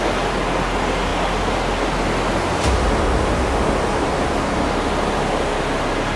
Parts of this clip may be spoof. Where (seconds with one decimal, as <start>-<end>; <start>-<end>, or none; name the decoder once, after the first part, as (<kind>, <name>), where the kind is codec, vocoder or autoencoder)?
none